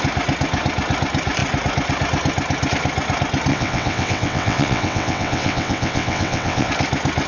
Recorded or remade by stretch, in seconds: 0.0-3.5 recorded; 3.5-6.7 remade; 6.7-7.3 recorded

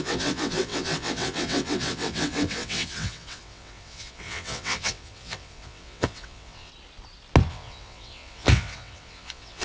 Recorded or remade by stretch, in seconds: 0.0-6.7 remade; 6.7-7.5 recorded; 7.5-9.6 remade

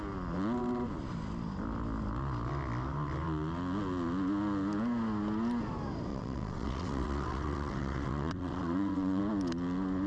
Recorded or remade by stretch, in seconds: 0.0-6.1 recorded; 6.1-9.2 remade; 9.2-10.1 recorded

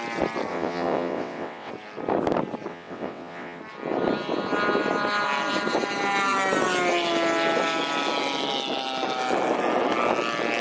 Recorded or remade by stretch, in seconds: 0.0-0.5 recorded; 0.5-1.7 remade; 1.7-2.7 recorded; 2.7-3.6 remade; 3.6-10.6 recorded